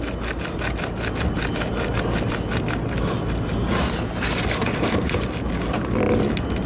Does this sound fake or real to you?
real